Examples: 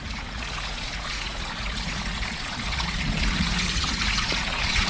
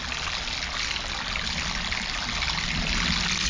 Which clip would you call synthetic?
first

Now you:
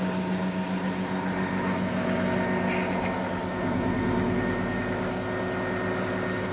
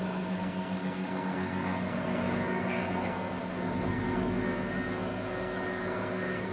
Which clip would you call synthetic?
second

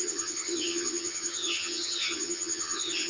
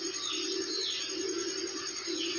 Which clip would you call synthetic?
first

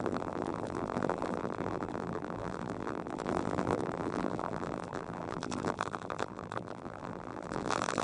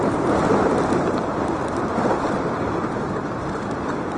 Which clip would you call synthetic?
first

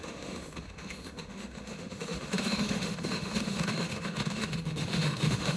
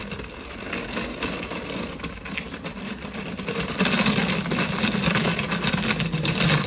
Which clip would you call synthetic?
first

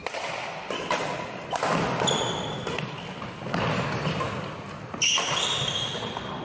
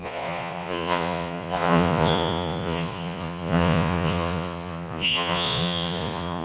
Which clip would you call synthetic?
second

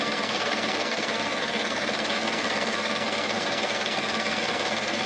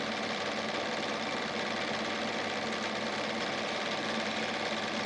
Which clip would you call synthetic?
first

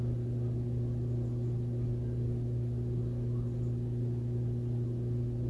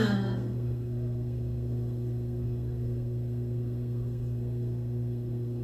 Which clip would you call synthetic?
second